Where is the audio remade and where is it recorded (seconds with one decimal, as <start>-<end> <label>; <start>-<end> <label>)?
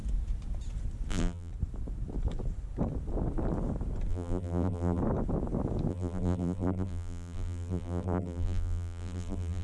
0.0-1.1 recorded; 1.1-1.5 remade; 1.5-4.1 recorded; 4.1-5.0 remade; 5.0-5.9 recorded; 5.9-9.6 remade